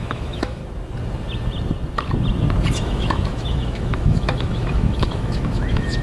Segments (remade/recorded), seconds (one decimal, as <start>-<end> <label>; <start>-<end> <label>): 0.0-0.6 remade; 0.6-2.7 recorded; 2.7-6.0 remade